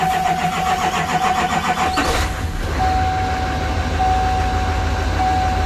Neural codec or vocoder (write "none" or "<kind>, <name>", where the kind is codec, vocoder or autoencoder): none